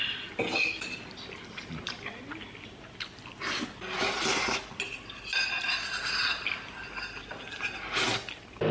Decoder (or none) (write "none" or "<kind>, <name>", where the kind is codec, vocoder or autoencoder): none